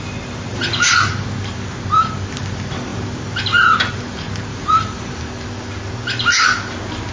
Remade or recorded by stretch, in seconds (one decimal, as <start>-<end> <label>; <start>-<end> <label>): 0.0-0.5 recorded; 0.5-1.1 remade; 1.1-4.5 recorded; 4.5-5.2 remade; 5.2-7.1 recorded